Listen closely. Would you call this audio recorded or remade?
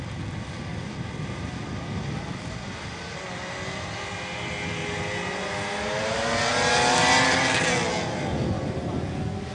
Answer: recorded